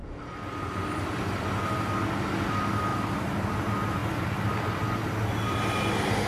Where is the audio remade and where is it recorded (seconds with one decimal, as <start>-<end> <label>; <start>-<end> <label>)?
0.0-2.9 recorded; 2.9-3.5 remade; 3.5-6.3 recorded